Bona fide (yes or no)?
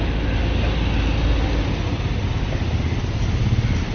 yes